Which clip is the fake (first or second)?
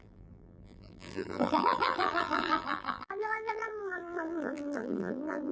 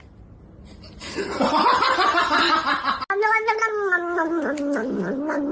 first